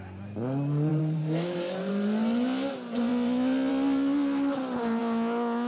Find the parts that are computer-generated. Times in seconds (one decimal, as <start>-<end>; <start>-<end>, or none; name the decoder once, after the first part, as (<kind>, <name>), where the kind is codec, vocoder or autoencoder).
0.9-1.9 (vocoder, BigVGAN v2)